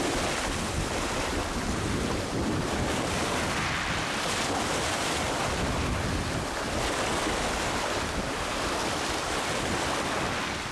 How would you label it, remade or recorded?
recorded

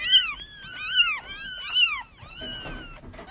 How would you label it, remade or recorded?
recorded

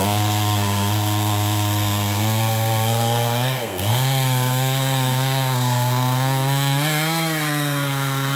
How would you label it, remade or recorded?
remade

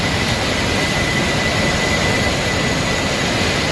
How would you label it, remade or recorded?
recorded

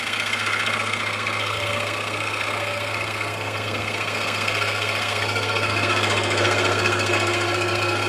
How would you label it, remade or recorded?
remade